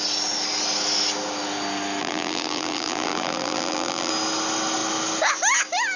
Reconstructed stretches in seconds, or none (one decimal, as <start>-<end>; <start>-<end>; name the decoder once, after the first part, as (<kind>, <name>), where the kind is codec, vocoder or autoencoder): 2.0-4.1 (vocoder, BigVGAN v2)